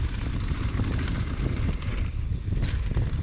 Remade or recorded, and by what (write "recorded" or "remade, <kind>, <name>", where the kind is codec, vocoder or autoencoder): recorded